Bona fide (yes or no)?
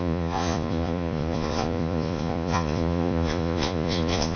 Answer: no